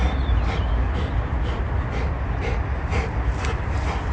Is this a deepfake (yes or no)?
no